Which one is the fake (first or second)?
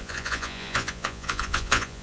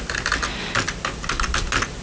first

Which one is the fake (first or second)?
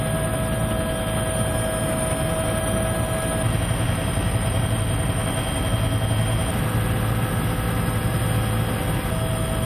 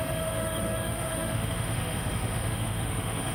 second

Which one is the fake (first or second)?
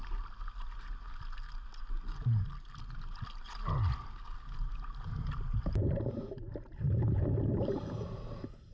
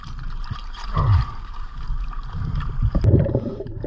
second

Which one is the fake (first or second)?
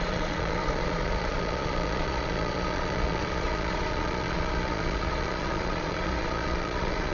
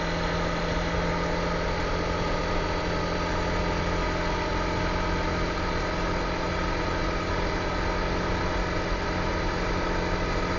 first